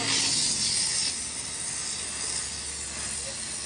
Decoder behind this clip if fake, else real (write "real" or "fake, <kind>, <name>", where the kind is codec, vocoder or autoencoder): real